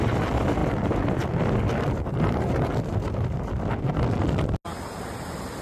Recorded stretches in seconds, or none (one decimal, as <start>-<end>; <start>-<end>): 0.0-5.6